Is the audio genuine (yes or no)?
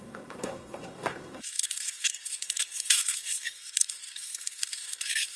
no